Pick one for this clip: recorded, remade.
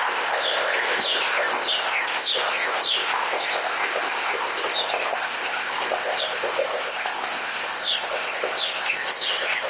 remade